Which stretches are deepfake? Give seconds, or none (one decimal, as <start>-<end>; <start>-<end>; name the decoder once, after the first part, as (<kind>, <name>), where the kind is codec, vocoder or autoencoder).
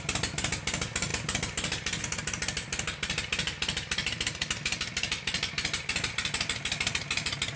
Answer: none